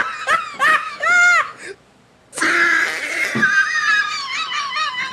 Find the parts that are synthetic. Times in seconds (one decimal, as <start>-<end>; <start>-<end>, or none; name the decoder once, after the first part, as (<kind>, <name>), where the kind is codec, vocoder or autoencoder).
0.7-1.6 (autoencoder, DAC-VAE)